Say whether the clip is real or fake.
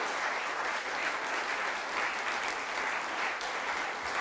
real